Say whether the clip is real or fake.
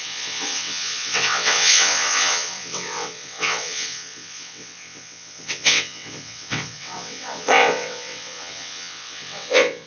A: fake